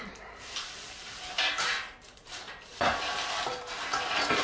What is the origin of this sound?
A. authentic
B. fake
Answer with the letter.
B